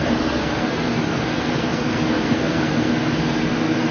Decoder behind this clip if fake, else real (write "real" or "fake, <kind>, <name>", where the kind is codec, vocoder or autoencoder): fake, codec, SNAC